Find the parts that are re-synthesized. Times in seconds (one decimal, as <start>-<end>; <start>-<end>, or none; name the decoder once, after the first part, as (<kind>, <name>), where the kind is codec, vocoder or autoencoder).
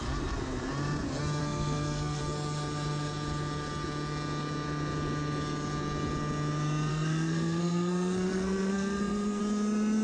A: 1.4-2.2 (codec, SNAC); 6.9-9.4